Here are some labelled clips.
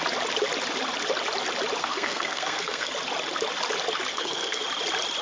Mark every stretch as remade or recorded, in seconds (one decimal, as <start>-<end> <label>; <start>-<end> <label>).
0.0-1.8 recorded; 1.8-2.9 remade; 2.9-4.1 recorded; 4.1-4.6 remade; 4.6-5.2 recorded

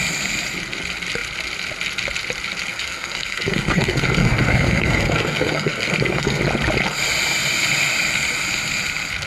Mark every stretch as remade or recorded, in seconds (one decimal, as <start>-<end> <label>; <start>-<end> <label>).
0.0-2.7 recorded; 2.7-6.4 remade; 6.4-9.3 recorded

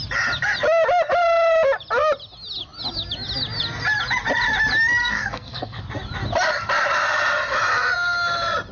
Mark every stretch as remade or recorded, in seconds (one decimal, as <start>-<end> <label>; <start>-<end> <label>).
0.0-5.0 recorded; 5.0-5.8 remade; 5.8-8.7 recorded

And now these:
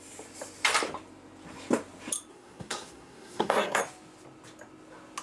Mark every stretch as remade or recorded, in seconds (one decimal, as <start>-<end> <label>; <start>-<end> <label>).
0.0-2.3 recorded; 2.3-3.8 remade; 3.8-5.2 recorded

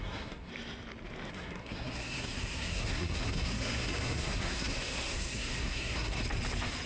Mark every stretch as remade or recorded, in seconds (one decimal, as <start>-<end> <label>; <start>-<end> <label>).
0.0-0.5 remade; 0.5-1.3 recorded; 1.3-6.2 remade; 6.2-6.9 recorded

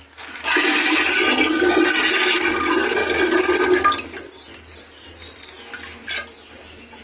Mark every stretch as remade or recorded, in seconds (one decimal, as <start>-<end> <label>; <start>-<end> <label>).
0.0-7.0 recorded

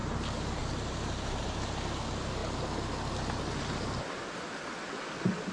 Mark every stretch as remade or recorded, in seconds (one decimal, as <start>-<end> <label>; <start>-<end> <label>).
0.0-5.5 recorded

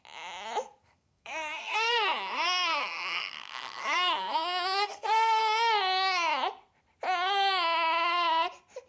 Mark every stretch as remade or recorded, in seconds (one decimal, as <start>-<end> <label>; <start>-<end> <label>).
0.0-0.8 recorded; 0.8-5.4 remade; 5.4-8.9 recorded